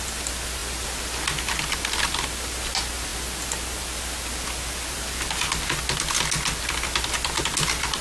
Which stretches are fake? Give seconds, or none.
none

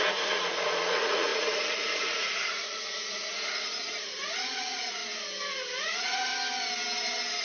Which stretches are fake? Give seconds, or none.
0.0-5.0 (vocoder, Vocos); 5.8-6.3

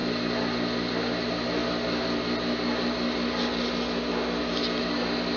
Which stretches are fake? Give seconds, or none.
none

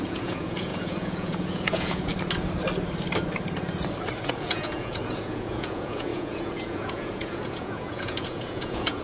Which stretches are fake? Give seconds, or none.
0.0-2.1 (vocoder, Vocos); 4.2-9.0

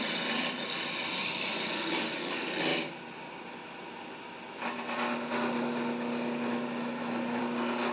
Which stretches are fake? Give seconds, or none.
none

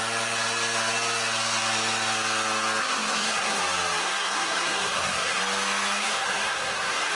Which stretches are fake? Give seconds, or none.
2.8-3.6 (codec, SNAC); 4.0-5.4; 6.0-7.1

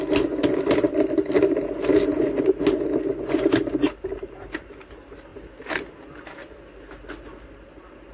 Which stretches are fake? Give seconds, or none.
none